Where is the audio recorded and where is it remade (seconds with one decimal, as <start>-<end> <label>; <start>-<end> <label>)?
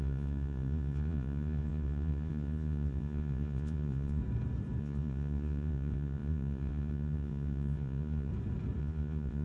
0.0-4.2 remade; 4.2-4.8 recorded; 4.8-8.3 remade; 8.3-8.8 recorded; 8.8-9.4 remade